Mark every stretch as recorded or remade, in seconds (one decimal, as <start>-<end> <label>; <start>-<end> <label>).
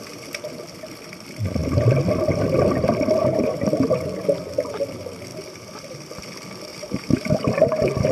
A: 0.0-6.7 recorded; 6.7-7.3 remade; 7.3-8.1 recorded